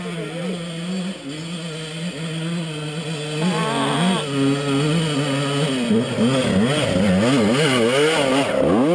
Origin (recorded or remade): recorded